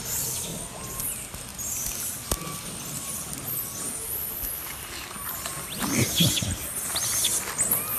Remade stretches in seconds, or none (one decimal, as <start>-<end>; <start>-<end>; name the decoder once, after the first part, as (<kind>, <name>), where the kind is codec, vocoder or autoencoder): none